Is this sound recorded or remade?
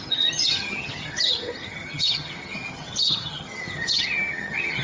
remade